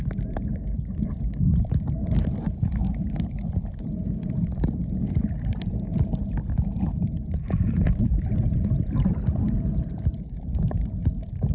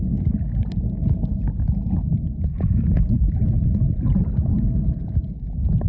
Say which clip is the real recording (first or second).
second